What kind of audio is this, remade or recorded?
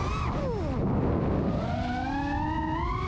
recorded